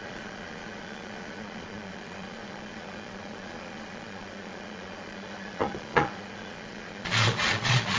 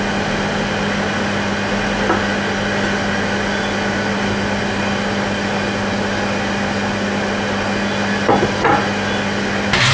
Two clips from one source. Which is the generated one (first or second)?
first